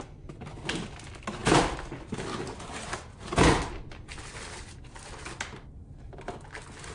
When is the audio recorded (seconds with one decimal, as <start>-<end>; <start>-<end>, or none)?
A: 0.0-6.9